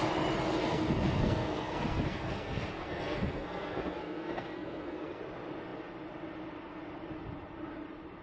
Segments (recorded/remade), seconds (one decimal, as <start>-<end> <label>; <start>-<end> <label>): 0.0-0.6 recorded; 0.6-5.2 remade; 5.2-8.2 recorded